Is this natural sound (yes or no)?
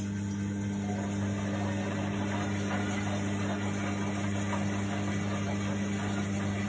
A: yes